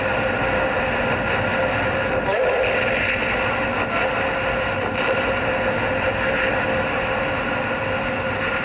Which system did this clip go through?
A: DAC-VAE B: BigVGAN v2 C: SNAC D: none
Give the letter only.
D